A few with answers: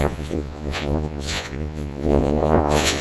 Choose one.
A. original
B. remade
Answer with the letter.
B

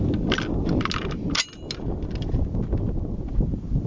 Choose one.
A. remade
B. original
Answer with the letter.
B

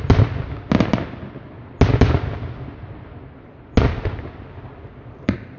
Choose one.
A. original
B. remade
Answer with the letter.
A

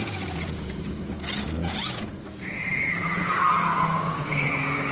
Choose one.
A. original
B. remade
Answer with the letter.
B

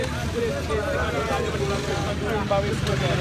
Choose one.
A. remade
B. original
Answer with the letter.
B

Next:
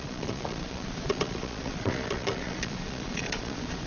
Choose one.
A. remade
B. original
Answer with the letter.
A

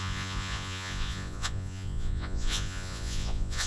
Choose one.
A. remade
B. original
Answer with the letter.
A